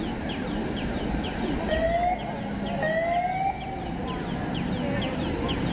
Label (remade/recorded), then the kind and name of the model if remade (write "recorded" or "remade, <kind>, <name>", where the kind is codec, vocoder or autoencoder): recorded